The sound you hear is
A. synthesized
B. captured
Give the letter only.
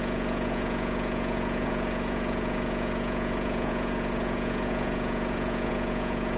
A